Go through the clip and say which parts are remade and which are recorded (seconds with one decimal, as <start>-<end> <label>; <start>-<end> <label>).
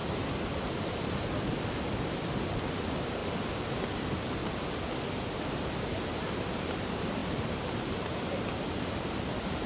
0.0-2.5 recorded; 2.5-3.2 remade; 3.2-3.9 recorded; 3.9-4.4 remade; 4.4-5.5 recorded; 5.5-9.7 remade